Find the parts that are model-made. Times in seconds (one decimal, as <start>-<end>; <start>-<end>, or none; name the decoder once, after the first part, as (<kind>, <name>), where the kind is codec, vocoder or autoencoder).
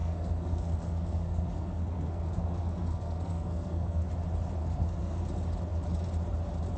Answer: 0.0-4.1 (codec, SNAC); 4.6-5.2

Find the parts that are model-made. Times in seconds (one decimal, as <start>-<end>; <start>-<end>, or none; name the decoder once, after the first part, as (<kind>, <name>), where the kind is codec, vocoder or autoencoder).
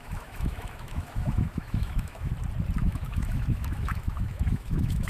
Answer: 0.0-2.3 (autoencoder, DAC-VAE); 2.8-5.1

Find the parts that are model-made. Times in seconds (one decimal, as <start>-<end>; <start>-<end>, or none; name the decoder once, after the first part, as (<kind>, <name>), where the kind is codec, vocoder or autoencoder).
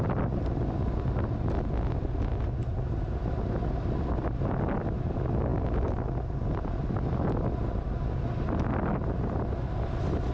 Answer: none